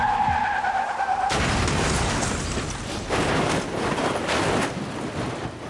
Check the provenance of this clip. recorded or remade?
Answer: recorded